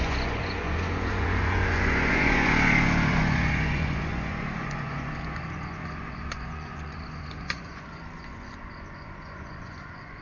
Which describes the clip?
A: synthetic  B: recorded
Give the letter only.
A